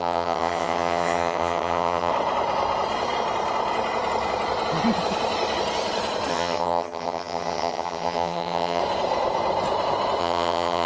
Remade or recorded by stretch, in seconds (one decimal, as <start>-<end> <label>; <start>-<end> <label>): 0.0-2.1 remade; 2.1-6.3 recorded; 6.3-8.8 remade; 8.8-10.2 recorded; 10.2-10.9 remade

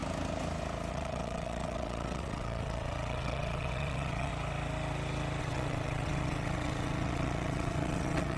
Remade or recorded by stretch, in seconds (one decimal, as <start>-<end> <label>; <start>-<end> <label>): 0.0-0.9 recorded; 0.9-4.3 remade; 4.3-5.4 recorded; 5.4-8.4 remade